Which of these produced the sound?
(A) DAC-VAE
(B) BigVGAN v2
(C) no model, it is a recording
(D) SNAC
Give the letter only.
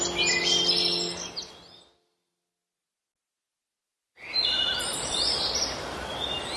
C